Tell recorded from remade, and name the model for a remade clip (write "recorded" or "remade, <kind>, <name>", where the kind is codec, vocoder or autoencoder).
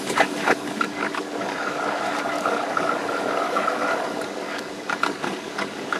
remade, codec, DAC